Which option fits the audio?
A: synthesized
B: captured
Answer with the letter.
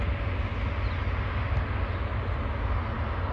B